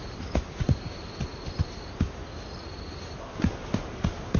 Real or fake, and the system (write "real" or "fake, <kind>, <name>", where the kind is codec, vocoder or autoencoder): real